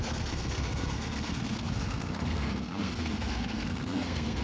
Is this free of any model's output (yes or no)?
no